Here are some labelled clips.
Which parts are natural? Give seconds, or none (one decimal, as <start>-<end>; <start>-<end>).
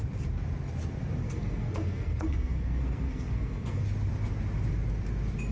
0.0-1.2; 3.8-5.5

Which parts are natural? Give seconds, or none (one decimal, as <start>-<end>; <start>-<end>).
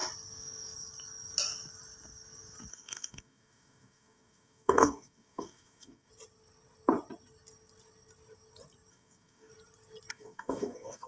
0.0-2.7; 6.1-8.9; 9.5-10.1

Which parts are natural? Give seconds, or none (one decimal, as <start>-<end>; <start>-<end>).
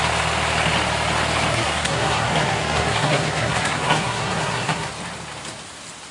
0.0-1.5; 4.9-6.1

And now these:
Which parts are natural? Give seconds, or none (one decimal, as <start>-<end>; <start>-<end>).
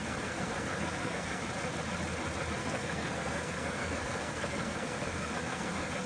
1.4-2.6